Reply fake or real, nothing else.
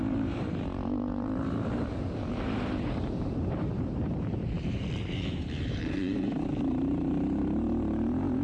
fake